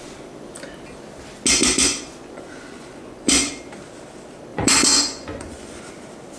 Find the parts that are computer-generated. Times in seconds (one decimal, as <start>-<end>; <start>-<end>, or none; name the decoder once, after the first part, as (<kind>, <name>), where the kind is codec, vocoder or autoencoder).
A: 1.6-3.5 (vocoder, Vocos); 4.5-5.8